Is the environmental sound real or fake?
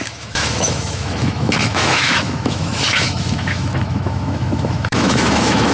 fake